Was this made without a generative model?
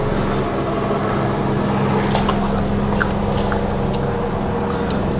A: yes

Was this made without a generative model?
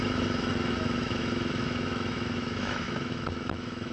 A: no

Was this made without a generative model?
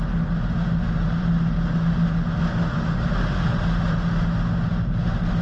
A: yes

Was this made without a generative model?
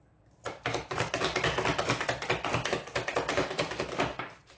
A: yes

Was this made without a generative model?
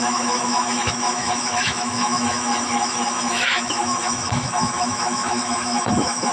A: no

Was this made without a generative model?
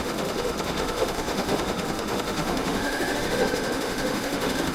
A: no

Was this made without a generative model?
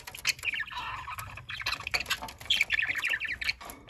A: yes